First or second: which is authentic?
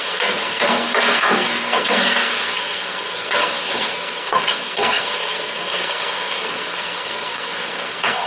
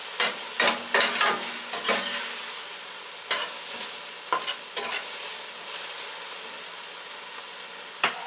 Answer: second